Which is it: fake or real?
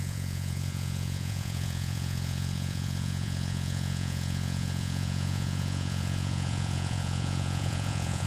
fake